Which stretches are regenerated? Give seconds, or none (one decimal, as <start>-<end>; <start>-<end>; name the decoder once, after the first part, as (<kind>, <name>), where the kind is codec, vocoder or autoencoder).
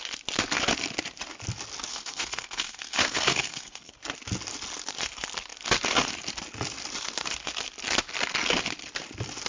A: 1.9-3.9 (codec, SNAC)